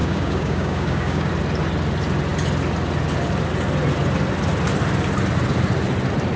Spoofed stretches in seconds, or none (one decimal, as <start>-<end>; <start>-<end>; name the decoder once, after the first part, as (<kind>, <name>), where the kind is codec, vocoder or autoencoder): 0.0-1.3 (codec, DAC)

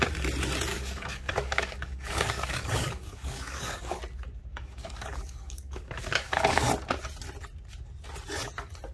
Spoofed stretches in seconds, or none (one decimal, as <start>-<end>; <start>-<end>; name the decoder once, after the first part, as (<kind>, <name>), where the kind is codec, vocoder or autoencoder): 0.7-4.0 (codec, DAC); 4.5-6.7